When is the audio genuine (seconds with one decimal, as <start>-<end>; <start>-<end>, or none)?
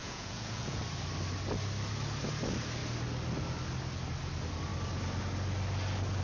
0.8-6.2